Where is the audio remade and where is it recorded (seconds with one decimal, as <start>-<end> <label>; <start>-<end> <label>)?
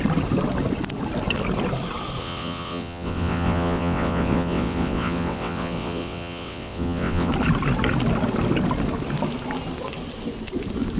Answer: 0.0-2.2 recorded; 2.2-7.3 remade; 7.3-11.0 recorded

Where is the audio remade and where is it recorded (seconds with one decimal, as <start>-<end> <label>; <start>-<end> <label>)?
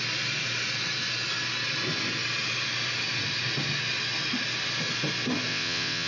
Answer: 0.0-5.5 recorded; 5.5-6.1 remade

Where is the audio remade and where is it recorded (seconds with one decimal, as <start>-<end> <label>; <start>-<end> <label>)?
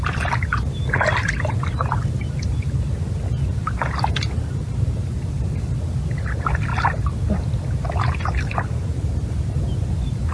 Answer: 0.0-10.3 recorded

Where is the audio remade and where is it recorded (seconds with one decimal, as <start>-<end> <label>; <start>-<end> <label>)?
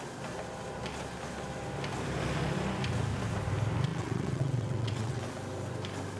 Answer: 0.0-3.9 recorded; 3.9-5.2 remade; 5.2-6.2 recorded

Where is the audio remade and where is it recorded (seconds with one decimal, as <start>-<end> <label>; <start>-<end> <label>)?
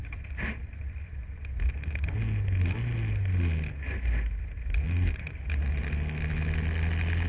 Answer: 0.0-7.3 recorded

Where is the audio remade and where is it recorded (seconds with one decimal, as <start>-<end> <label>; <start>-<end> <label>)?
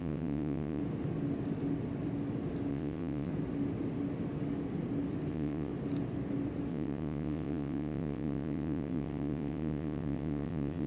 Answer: 0.0-0.8 remade; 0.8-2.7 recorded; 2.7-3.3 remade; 3.3-5.3 recorded; 5.3-5.7 remade; 5.7-6.7 recorded; 6.7-10.9 remade